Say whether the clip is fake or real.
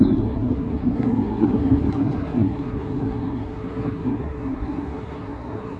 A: fake